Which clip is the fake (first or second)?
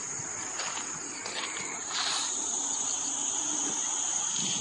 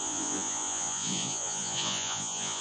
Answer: second